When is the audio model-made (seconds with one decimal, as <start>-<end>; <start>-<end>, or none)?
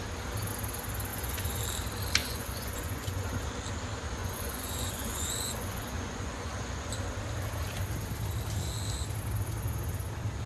1.1-1.6; 2.2-3.4; 4.2-6.9